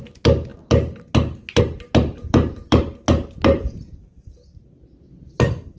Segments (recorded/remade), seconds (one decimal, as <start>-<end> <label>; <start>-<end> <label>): 0.0-2.2 recorded; 2.2-2.8 remade; 2.8-5.8 recorded